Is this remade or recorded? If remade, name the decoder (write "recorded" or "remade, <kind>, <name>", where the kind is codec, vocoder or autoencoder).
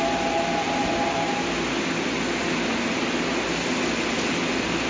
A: recorded